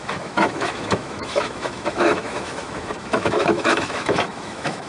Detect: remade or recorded remade